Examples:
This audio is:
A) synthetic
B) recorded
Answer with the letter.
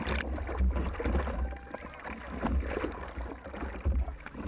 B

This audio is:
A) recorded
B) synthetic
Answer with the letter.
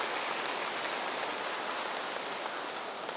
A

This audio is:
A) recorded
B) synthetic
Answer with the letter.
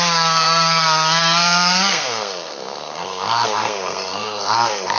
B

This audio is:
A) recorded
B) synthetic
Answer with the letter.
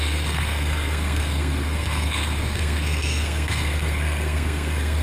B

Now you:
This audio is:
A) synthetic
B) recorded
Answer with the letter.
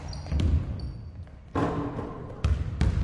B